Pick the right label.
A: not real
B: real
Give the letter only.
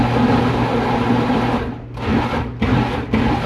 B